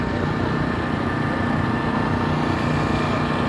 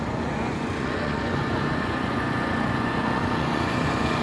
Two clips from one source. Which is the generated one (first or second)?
second